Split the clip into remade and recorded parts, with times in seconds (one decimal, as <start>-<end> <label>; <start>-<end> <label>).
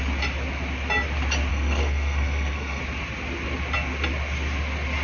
0.0-1.5 recorded; 1.5-2.8 remade; 2.8-5.0 recorded